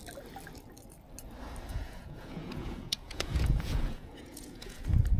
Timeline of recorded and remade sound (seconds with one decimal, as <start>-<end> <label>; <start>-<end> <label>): 0.0-1.7 recorded; 1.7-4.8 remade; 4.8-5.2 recorded